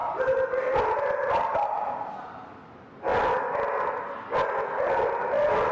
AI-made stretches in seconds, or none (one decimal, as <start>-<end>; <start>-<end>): none